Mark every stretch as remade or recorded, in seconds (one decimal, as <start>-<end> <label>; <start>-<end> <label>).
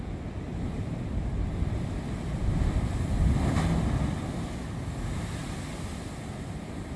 0.0-0.5 recorded; 0.5-1.3 remade; 1.3-7.0 recorded